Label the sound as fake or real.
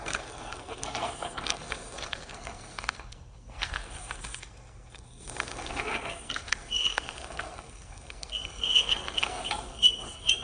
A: fake